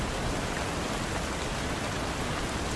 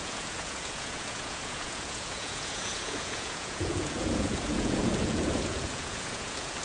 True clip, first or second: first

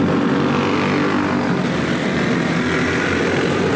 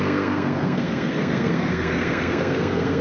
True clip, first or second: first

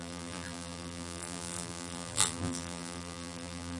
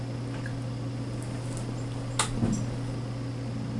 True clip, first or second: second